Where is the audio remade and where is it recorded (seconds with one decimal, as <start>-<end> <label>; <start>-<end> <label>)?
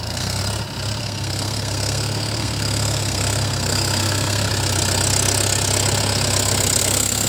0.0-0.4 remade; 0.4-1.0 recorded; 1.0-4.5 remade; 4.5-6.8 recorded; 6.8-7.3 remade